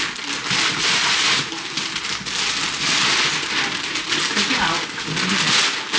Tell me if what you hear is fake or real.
real